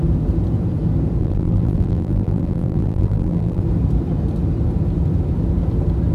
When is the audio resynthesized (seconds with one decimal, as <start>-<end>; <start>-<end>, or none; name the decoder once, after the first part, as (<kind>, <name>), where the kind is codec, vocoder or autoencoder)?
1.2-3.6 (vocoder, BigVGAN v2)

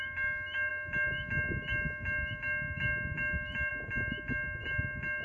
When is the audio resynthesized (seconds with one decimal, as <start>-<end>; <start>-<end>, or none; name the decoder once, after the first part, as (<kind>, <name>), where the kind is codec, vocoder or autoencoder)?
none

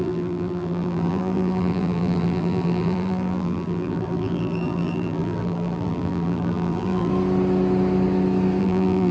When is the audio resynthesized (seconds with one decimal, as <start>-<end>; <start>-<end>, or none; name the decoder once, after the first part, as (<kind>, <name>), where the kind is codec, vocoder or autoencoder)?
0.0-7.1 (vocoder, BigVGAN v2); 8.6-9.1

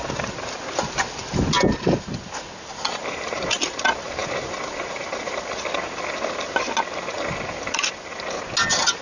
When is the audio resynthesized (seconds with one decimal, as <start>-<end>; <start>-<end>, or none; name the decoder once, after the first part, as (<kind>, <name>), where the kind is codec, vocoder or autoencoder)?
none

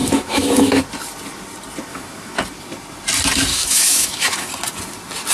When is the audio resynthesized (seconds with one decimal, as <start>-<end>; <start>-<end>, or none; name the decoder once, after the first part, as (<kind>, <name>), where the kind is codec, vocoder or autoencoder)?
0.0-0.8 (autoencoder, DAC-VAE); 1.9-2.4; 3.5-4.5

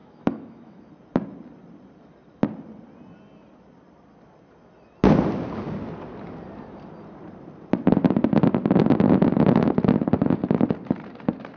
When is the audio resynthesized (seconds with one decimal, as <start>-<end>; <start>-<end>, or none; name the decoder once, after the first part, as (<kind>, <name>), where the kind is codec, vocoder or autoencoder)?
0.0-0.8 (autoencoder, DAC-VAE)

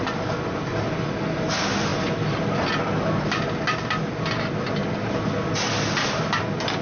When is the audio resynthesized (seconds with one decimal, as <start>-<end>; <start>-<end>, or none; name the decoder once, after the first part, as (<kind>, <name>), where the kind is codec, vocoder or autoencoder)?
4.8-5.3 (vocoder, BigVGAN v2)